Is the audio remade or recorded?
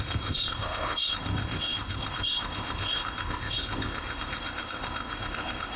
remade